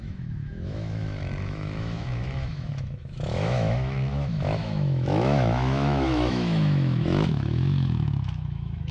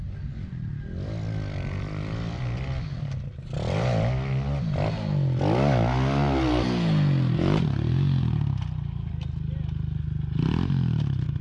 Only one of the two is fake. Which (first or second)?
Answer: first